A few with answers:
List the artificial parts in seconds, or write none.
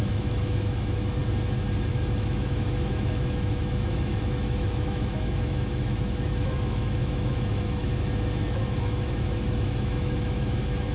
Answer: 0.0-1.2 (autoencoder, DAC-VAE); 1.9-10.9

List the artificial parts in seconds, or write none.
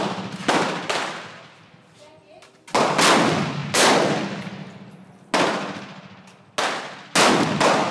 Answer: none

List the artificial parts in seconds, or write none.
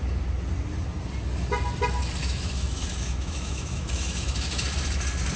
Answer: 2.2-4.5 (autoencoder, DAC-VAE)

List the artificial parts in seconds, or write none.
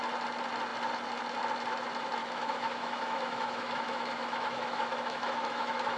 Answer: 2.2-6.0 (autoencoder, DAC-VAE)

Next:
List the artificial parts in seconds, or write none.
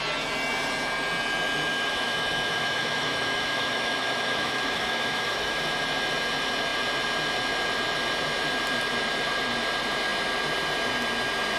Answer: 1.7-5.6 (autoencoder, DAC-VAE)